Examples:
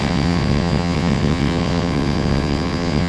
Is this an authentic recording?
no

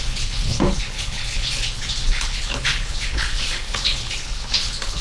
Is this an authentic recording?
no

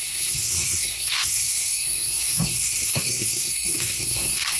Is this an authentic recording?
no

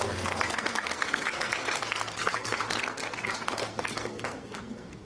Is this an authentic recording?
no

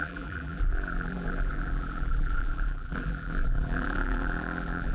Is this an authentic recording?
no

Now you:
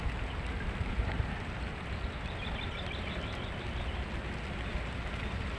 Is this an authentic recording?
yes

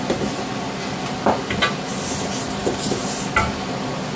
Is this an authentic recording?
yes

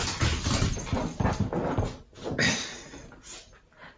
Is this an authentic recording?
yes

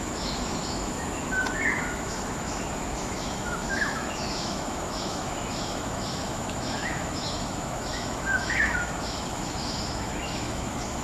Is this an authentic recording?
no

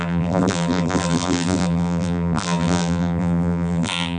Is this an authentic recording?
no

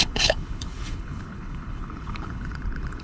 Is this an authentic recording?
no